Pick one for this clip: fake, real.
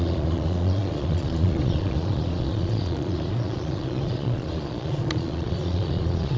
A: fake